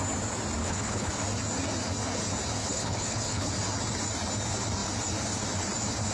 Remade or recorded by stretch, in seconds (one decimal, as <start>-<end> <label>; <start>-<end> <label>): 0.0-0.6 recorded; 0.6-1.1 remade; 1.1-2.6 recorded; 2.6-3.5 remade; 3.5-6.1 recorded